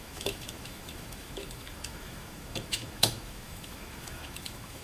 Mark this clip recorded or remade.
remade